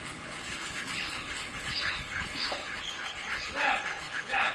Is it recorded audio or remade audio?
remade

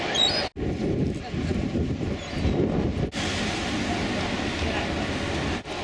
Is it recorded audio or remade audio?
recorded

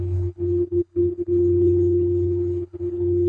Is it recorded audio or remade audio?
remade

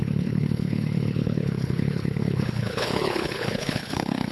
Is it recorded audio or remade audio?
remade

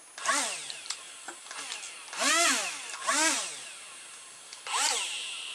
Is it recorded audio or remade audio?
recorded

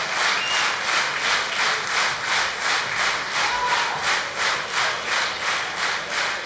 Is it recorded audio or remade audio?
recorded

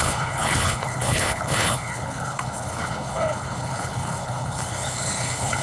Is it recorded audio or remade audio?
remade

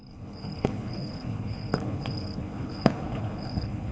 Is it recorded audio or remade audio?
remade